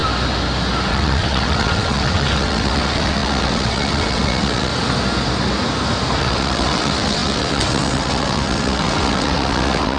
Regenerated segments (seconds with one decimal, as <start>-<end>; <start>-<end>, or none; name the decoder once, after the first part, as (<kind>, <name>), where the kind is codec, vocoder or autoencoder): 0.9-4.7 (vocoder, WaveNeXt); 6.2-10.0